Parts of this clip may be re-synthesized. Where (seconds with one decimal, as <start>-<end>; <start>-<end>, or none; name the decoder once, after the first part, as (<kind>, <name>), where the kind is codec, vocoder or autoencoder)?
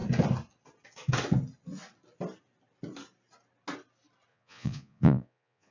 4.3-5.7 (vocoder, Vocos)